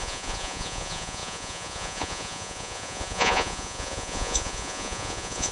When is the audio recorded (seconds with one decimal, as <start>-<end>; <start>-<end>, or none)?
none